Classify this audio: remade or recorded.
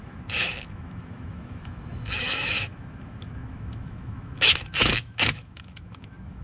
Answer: remade